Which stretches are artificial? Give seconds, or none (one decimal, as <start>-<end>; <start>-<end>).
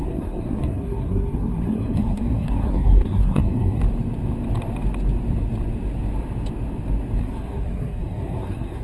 0.0-3.8; 7.2-8.8